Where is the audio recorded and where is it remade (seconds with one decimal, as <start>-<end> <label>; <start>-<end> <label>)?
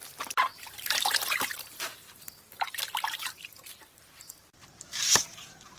0.0-5.8 remade